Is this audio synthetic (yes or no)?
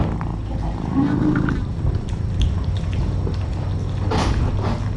no